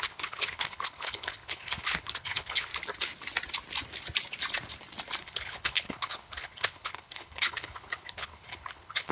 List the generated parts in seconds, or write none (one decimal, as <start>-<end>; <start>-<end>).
0.0-2.7; 5.2-9.1